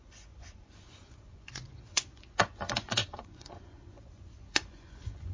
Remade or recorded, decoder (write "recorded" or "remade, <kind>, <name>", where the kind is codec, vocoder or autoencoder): remade, vocoder, Vocos